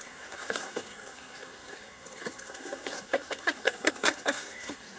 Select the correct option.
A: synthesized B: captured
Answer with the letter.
A